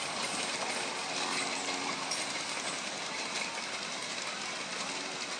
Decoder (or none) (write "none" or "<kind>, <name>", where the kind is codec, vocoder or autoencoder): vocoder, BigVGAN v2